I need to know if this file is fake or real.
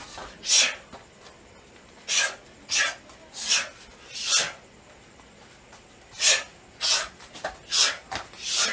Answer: real